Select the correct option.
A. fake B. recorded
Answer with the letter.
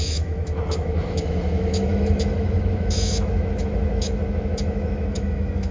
A